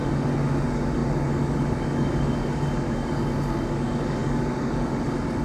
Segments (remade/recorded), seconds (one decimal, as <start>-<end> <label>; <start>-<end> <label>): 0.0-5.4 remade